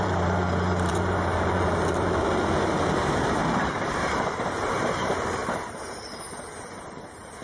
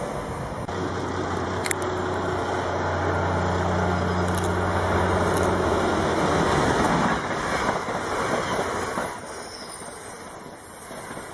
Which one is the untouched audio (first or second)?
second